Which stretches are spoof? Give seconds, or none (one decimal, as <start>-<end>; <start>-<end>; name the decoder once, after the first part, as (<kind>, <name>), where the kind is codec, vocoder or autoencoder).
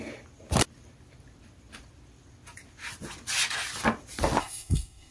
4.4-5.1 (codec, SNAC)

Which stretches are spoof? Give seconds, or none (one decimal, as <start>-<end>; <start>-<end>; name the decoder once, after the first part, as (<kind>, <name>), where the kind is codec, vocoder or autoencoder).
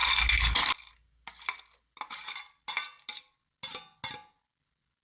none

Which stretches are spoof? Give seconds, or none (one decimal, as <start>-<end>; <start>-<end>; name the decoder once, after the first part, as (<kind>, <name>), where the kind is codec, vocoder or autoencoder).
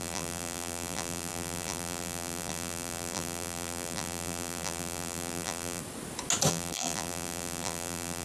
0.0-5.8 (vocoder, BigVGAN v2); 6.5-8.2